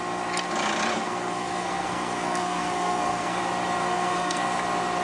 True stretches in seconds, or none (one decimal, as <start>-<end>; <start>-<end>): 0.0-0.9; 3.4-3.8; 4.6-5.0